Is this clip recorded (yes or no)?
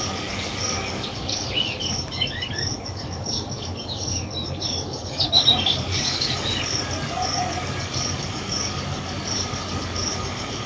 no